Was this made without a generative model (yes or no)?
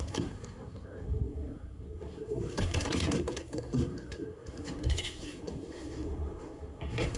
no